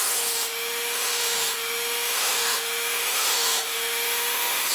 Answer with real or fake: fake